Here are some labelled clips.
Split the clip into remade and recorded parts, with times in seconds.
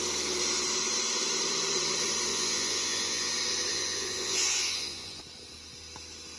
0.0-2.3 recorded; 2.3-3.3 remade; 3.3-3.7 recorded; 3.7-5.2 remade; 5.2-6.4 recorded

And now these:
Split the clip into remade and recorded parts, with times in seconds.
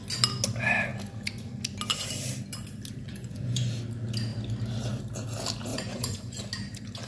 0.0-3.1 recorded; 3.1-3.7 remade; 3.7-5.7 recorded; 5.7-6.4 remade; 6.4-7.1 recorded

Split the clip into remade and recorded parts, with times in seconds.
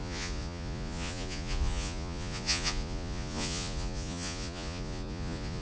0.0-5.6 remade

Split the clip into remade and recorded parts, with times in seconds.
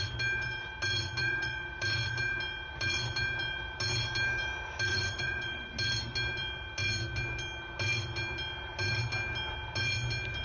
0.0-1.2 recorded; 1.2-1.7 remade; 1.7-4.9 recorded; 4.9-5.7 remade; 5.7-10.4 recorded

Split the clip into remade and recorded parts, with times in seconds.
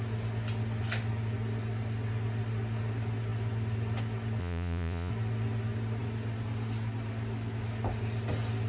0.0-4.4 recorded; 4.4-5.1 remade; 5.1-8.7 recorded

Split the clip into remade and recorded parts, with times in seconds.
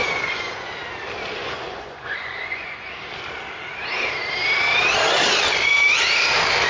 0.0-0.7 remade; 0.7-1.4 recorded; 1.4-2.9 remade; 2.9-6.7 recorded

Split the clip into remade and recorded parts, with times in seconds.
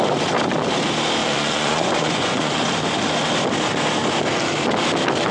0.0-1.2 recorded; 1.2-2.7 remade; 2.7-5.3 recorded